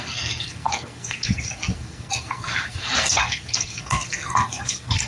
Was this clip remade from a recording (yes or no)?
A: yes